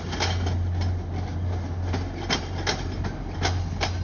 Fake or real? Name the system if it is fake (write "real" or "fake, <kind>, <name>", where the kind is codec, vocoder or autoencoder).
real